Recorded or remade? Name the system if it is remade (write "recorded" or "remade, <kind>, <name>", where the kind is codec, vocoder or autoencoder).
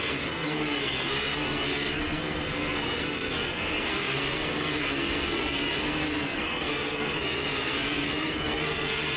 remade, codec, SNAC